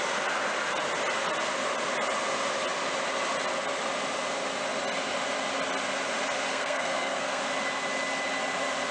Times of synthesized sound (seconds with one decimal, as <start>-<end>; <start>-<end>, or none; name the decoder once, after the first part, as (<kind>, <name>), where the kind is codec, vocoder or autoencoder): 6.5-7.4 (codec, SNAC)